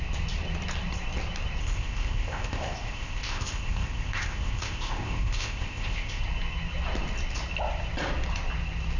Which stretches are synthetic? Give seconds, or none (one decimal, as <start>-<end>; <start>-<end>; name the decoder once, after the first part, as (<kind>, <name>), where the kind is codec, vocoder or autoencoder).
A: 1.6-6.2 (codec, ZipCodec)